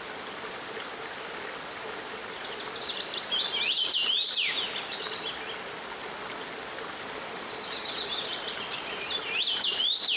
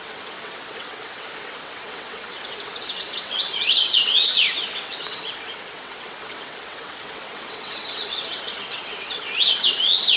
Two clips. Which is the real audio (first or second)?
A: first